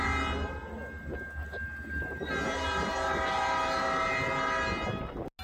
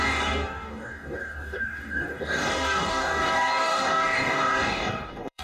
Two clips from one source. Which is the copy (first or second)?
second